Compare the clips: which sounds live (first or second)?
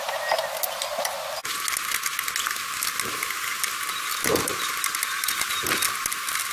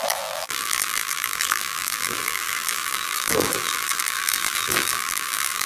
first